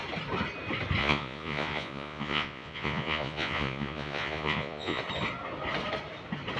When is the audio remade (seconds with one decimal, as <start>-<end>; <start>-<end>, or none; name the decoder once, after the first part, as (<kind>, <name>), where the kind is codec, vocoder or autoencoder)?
1.0-5.0 (vocoder, Vocos)